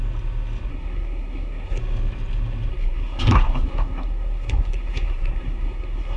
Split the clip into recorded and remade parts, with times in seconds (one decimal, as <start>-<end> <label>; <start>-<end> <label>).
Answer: 0.0-0.7 recorded; 0.7-1.8 remade; 1.8-2.7 recorded; 2.7-6.2 remade